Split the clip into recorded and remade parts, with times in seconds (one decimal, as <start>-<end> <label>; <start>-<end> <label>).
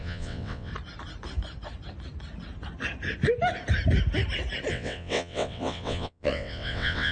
0.0-0.7 remade; 0.7-4.7 recorded; 4.7-7.1 remade